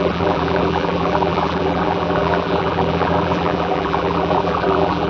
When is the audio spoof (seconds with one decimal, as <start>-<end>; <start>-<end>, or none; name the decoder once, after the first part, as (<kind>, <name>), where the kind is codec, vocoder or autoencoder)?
0.0-5.1 (vocoder, BigVGAN v2)